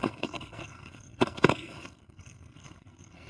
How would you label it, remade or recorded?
remade